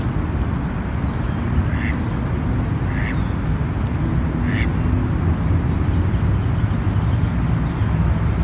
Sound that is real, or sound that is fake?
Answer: real